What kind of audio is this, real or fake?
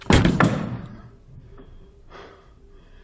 fake